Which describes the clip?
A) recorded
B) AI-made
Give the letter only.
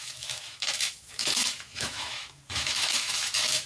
B